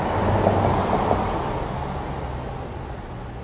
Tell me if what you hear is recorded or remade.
recorded